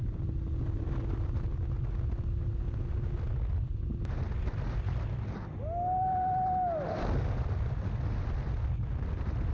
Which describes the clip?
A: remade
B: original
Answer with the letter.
B